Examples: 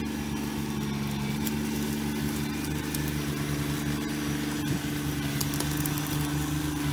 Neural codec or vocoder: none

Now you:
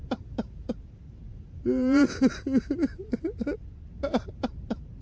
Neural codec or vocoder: vocoder, BigVGAN v2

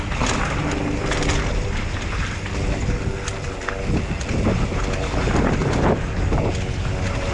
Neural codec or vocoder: none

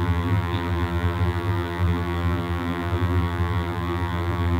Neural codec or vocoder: vocoder, BigVGAN v2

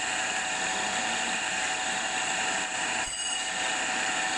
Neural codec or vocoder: vocoder, BigVGAN v2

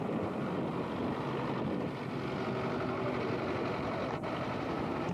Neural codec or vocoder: vocoder, BigVGAN v2